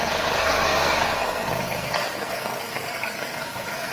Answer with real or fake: fake